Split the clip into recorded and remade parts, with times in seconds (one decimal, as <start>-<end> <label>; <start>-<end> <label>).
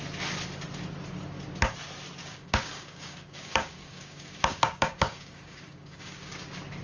0.0-2.2 recorded; 2.2-6.3 remade; 6.3-6.8 recorded